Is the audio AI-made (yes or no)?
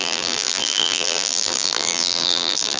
yes